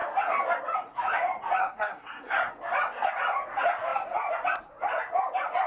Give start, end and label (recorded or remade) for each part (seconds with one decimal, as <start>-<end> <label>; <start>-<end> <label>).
0.0-1.6 recorded; 1.6-2.5 remade; 2.5-5.7 recorded